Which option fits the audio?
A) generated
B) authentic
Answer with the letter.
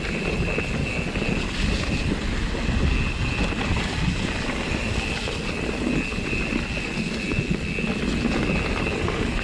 B